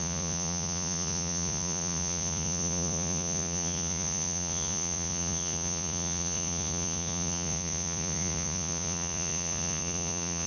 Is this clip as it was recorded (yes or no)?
no